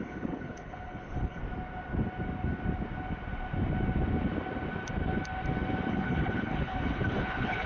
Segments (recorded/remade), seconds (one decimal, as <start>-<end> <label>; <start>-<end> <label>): 0.0-1.4 remade; 1.4-5.9 recorded; 5.9-7.7 remade